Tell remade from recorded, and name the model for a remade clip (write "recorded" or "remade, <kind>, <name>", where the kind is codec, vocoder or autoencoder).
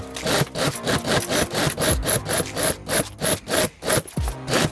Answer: recorded